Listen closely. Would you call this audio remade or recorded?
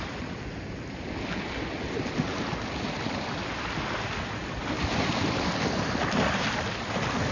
recorded